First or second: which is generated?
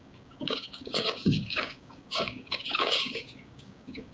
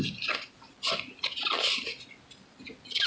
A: first